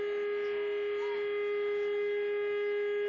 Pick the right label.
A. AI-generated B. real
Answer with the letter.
B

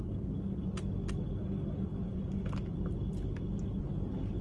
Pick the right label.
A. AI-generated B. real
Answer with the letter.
B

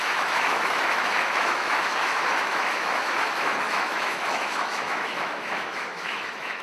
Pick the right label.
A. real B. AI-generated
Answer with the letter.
B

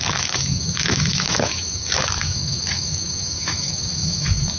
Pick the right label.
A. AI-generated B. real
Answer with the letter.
A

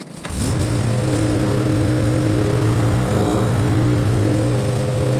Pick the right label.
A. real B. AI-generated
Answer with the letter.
A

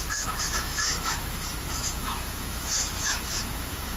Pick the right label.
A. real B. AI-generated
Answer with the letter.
B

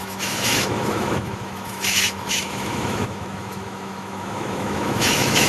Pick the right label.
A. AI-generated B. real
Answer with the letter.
A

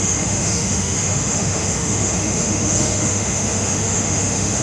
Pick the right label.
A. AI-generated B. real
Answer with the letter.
A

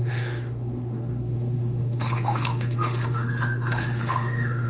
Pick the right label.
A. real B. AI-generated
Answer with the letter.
B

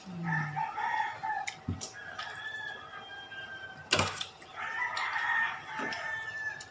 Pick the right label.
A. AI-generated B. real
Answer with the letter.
B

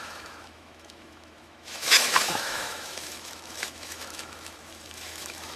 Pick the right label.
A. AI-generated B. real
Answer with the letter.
A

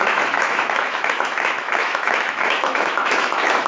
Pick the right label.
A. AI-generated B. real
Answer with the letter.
A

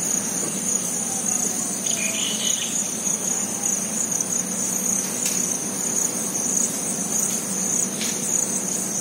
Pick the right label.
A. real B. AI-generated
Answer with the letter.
A